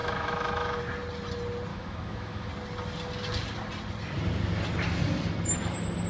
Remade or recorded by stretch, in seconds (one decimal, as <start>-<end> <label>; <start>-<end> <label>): 0.0-0.8 remade; 0.8-1.7 recorded; 1.7-2.5 remade; 2.5-6.1 recorded